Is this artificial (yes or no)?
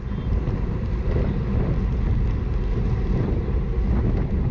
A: no